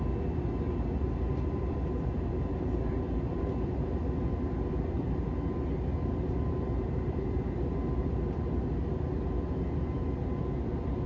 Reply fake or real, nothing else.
real